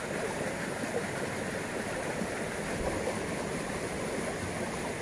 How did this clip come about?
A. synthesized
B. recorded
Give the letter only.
B